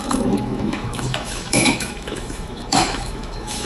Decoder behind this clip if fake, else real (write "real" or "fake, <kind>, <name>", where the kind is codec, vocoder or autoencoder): fake, autoencoder, DAC-VAE